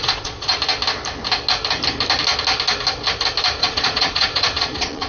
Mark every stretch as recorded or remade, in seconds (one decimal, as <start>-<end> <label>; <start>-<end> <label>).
0.0-0.5 remade; 0.5-3.6 recorded; 3.6-5.1 remade